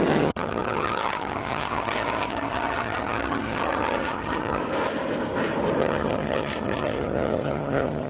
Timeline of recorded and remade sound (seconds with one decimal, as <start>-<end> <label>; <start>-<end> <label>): 0.0-4.6 remade; 4.6-5.8 recorded; 5.8-8.1 remade